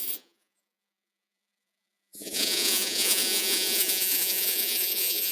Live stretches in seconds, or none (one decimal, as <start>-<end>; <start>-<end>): none